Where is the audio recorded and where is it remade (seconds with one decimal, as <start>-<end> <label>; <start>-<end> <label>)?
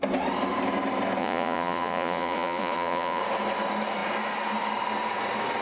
0.0-1.2 recorded; 1.2-3.2 remade; 3.2-5.6 recorded